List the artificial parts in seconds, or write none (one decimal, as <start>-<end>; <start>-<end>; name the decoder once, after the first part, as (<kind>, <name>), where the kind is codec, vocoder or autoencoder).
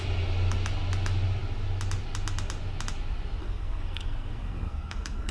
3.4-5.3 (codec, SNAC)